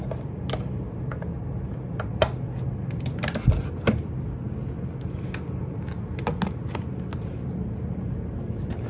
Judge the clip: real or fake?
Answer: real